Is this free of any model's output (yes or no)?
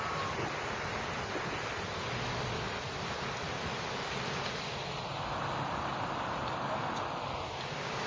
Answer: yes